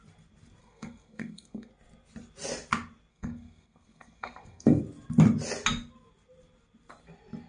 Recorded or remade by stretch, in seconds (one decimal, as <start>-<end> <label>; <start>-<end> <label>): 0.0-0.6 recorded; 0.6-1.7 remade; 1.7-3.1 recorded; 3.1-4.8 remade; 4.8-7.5 recorded